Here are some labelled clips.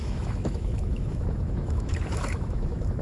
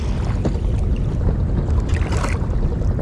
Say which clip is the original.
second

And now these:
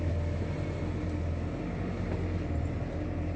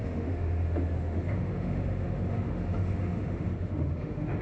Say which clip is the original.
first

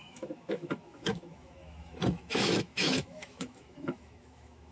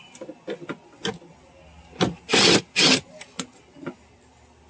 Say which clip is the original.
second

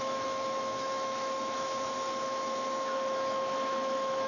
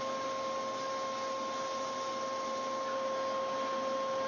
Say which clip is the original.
second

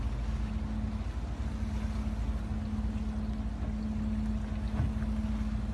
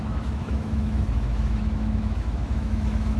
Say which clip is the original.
first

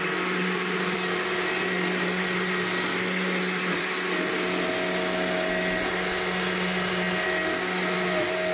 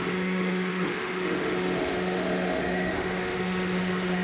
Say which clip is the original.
first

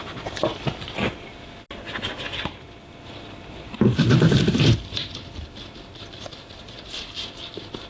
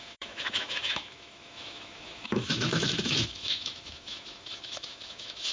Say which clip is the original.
first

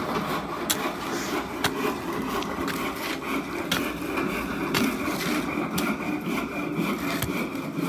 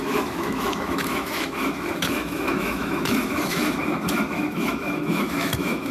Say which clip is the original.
first